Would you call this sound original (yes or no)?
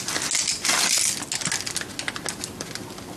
yes